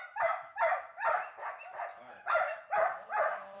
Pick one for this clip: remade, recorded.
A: recorded